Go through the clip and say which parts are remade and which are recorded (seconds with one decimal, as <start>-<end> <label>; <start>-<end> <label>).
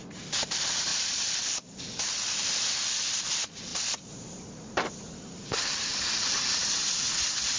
0.0-0.9 recorded; 0.9-1.8 remade; 1.8-3.7 recorded; 3.7-6.7 remade; 6.7-7.6 recorded